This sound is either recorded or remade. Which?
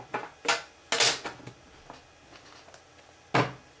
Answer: recorded